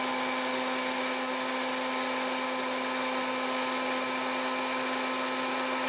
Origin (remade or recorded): recorded